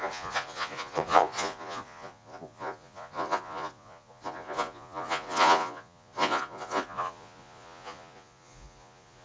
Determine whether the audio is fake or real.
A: fake